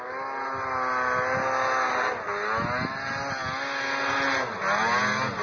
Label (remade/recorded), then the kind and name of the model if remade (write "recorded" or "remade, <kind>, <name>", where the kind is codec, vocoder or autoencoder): recorded